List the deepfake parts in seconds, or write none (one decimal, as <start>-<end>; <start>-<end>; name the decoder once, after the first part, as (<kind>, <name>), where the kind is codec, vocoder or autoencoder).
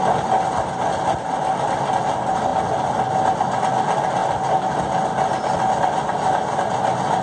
none